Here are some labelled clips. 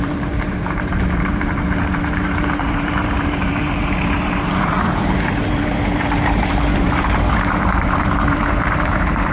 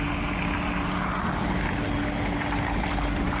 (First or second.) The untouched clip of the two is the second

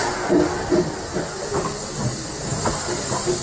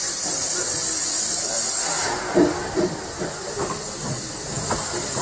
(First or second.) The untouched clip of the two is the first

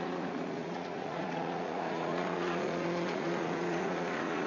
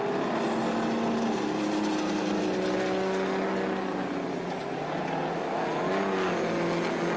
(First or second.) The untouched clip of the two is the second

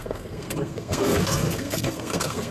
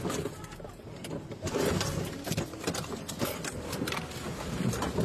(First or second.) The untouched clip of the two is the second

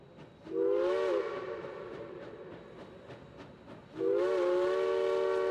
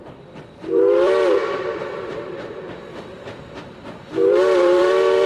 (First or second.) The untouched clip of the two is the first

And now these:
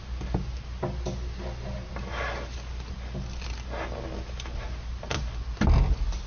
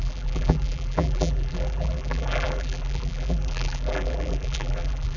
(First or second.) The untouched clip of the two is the first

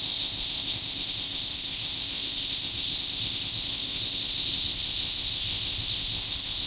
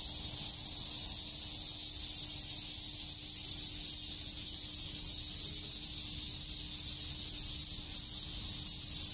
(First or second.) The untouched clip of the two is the second